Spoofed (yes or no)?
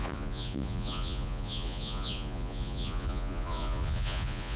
yes